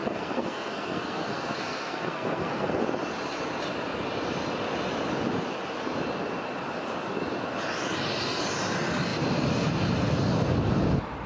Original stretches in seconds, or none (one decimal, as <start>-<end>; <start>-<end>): 2.8-11.3